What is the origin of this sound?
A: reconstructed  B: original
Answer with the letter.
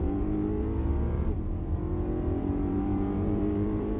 A